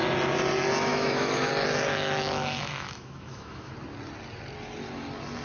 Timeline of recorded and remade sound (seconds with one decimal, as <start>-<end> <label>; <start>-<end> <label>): 0.0-0.9 recorded; 0.9-1.5 remade; 1.5-1.9 recorded; 1.9-3.7 remade; 3.7-5.4 recorded